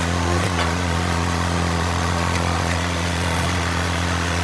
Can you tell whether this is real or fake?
fake